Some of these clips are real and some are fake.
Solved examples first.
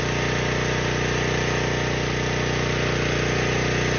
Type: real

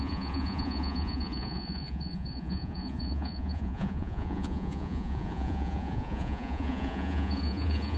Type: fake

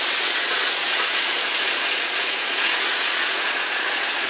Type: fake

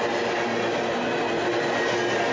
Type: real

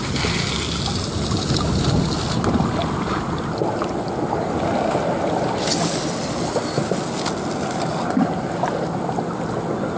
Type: real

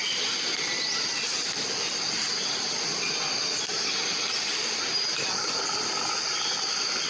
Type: real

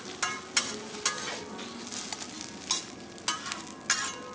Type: real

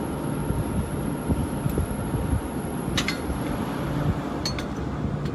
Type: real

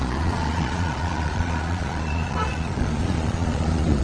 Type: fake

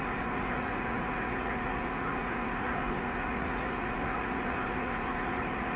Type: fake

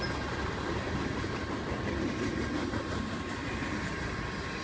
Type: real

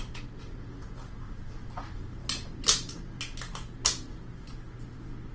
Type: real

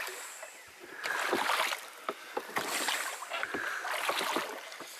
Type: real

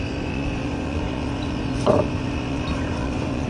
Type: fake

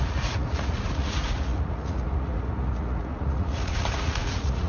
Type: fake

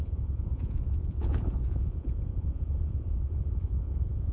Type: fake